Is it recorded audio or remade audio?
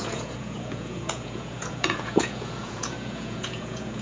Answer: remade